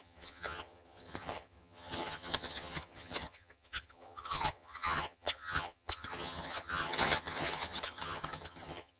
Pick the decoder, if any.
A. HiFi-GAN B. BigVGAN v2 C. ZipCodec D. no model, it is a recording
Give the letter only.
A